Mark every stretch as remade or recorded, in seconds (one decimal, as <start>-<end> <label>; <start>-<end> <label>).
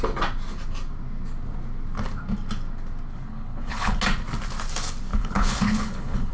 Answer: 0.0-3.1 recorded; 3.1-4.0 remade; 4.0-5.1 recorded; 5.1-6.3 remade